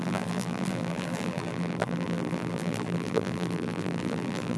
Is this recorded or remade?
remade